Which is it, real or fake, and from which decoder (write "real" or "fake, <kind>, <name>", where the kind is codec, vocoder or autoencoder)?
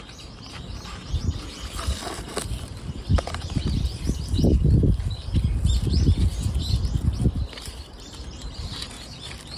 real